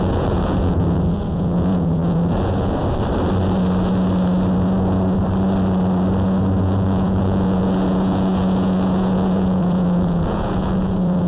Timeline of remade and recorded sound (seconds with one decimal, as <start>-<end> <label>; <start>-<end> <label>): 0.0-2.8 remade; 2.8-6.6 recorded; 6.6-11.3 remade